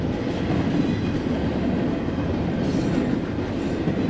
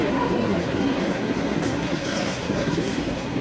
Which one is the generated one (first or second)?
second